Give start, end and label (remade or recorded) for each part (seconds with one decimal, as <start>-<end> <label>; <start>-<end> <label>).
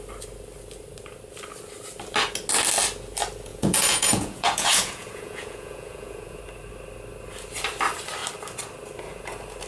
0.0-3.5 recorded; 3.5-6.4 remade; 6.4-9.7 recorded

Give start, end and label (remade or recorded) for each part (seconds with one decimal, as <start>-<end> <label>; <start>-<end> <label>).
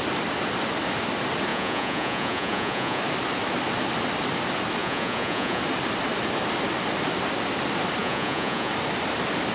0.0-1.5 recorded; 1.5-3.0 remade; 3.0-4.8 recorded; 4.8-5.6 remade; 5.6-8.0 recorded; 8.0-8.7 remade; 8.7-9.5 recorded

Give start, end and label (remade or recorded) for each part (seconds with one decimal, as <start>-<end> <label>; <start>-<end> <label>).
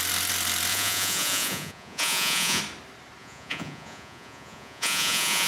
0.0-0.7 recorded; 0.7-2.6 remade; 2.6-3.2 recorded; 3.2-5.5 remade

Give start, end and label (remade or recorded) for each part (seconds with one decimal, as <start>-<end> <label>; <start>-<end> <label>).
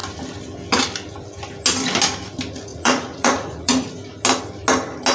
0.0-2.7 recorded; 2.7-3.9 remade; 3.9-5.1 recorded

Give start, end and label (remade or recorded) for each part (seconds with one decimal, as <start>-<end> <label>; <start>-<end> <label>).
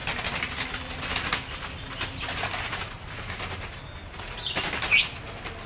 0.0-5.7 recorded